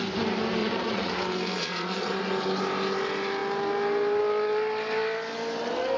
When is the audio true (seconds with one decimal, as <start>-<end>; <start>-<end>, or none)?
0.0-0.6; 1.1-1.6; 2.2-6.0

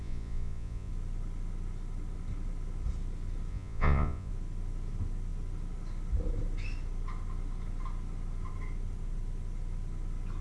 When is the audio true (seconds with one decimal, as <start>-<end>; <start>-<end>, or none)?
0.9-3.5; 4.3-10.4